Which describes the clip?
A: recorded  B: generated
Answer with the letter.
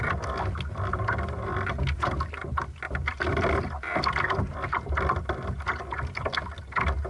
A